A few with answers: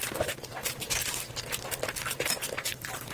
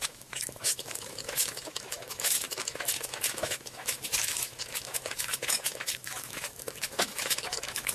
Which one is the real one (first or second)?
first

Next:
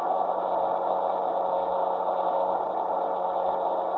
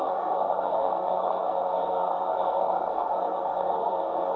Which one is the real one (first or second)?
first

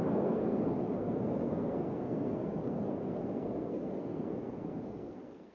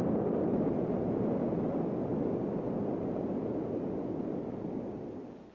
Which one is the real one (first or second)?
second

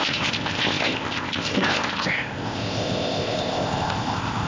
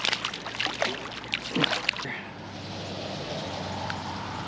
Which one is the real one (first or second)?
second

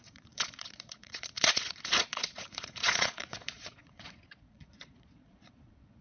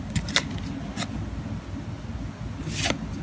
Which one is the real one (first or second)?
second